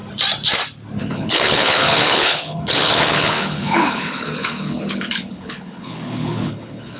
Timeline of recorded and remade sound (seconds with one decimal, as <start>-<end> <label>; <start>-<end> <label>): 0.0-1.0 recorded; 1.0-7.0 remade